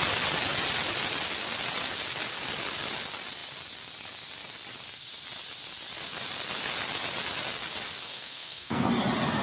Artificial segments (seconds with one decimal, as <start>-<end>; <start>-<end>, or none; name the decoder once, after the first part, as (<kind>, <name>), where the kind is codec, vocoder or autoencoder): 8.0-8.9 (codec, SNAC)